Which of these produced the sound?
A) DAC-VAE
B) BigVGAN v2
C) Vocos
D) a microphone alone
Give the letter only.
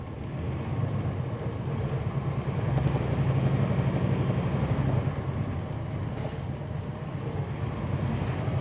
D